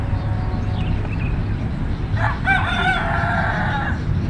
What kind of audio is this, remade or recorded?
recorded